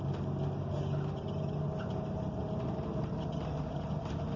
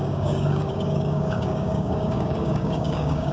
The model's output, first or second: second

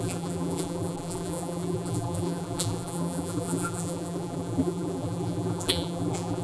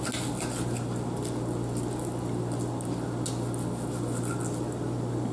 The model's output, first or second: first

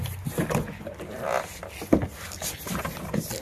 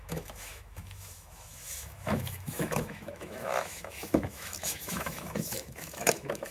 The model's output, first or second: second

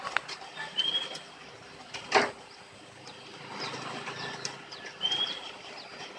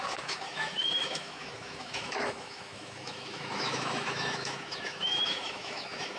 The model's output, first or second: second